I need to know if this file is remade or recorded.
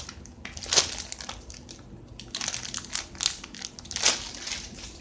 recorded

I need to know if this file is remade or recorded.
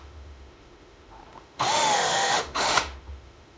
remade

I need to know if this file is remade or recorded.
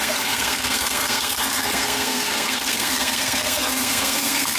remade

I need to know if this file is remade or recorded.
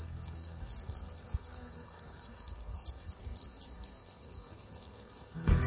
remade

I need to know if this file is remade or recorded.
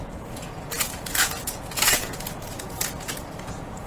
remade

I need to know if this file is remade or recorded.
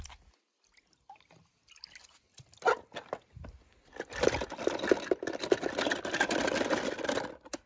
recorded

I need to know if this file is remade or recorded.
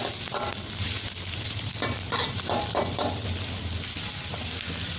recorded